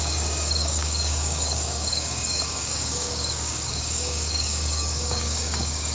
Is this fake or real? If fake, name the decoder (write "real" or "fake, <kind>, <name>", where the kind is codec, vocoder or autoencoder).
fake, codec, DAC